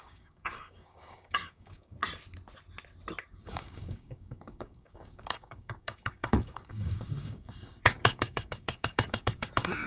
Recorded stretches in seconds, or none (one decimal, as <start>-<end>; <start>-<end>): 2.0-3.2